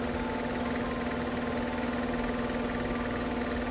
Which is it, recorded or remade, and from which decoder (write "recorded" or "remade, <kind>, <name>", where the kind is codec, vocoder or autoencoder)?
recorded